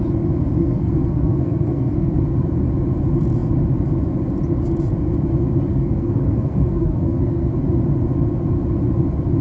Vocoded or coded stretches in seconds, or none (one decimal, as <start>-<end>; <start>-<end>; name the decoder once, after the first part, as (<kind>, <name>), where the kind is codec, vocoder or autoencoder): 0.6-2.1 (codec, SNAC); 5.7-7.5

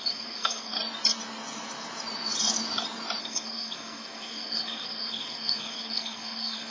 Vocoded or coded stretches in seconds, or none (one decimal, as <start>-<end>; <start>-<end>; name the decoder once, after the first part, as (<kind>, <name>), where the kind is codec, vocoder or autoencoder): 0.0-0.8 (codec, SNAC); 3.2-6.7

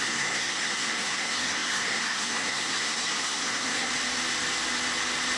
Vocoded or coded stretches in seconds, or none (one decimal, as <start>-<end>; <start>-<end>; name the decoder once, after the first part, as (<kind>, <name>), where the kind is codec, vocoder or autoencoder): 0.0-3.9 (codec, SNAC)

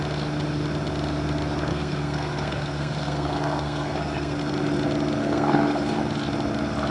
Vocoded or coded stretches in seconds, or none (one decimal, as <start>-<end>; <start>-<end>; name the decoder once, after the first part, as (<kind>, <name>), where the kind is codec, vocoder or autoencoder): 1.7-4.4 (codec, SNAC); 5.2-6.0

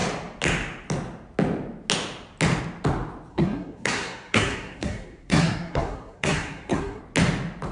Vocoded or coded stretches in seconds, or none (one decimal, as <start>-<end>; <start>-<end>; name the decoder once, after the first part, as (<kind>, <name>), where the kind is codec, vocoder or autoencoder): 3.3-7.0 (codec, SNAC)